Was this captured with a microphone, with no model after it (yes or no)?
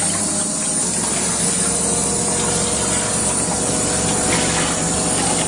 yes